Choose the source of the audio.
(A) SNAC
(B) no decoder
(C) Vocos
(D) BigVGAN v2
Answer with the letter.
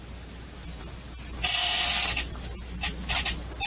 B